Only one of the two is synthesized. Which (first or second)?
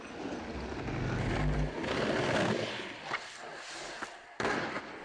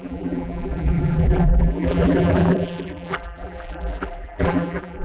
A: second